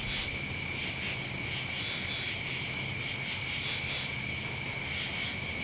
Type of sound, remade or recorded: recorded